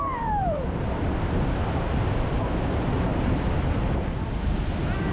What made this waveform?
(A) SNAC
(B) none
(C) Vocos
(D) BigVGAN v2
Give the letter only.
D